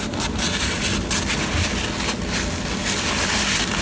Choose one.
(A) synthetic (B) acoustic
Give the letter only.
B